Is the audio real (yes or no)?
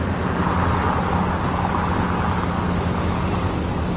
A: yes